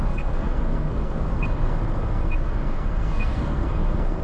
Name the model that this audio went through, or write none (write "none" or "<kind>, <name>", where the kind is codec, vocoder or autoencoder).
codec, SNAC